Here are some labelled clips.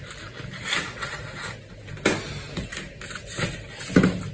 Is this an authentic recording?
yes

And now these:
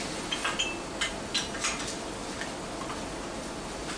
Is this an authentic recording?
yes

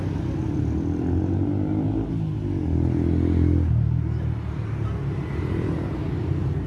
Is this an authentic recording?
yes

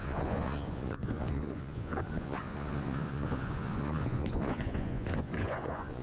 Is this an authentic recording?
no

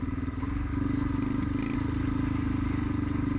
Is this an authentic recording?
yes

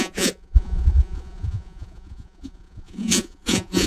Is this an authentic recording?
no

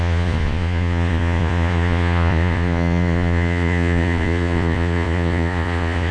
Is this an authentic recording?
no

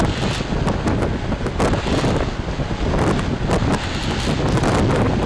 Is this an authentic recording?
yes